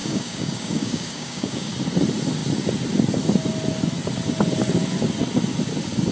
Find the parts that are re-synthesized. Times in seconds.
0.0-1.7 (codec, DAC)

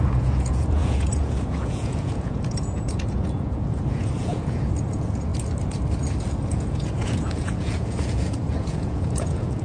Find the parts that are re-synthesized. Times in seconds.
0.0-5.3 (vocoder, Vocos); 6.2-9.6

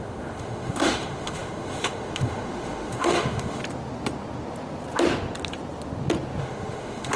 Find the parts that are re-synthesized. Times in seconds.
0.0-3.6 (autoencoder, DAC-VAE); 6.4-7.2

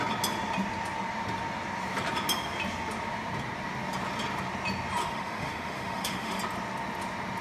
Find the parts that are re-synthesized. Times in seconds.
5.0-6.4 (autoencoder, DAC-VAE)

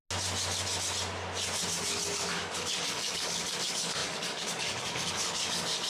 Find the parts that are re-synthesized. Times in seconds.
2.3-5.9 (codec, DAC)

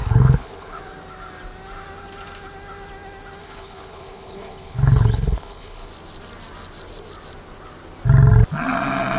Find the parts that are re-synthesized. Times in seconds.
0.0-0.8 (codec, HILCodec); 3.4-5.9

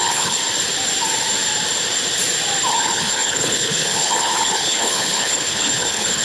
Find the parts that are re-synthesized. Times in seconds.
0.0-0.4 (codec, HILCodec); 2.7-6.2